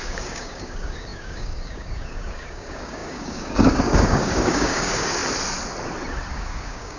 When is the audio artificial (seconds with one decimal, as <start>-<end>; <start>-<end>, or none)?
0.0-5.2; 6.3-7.0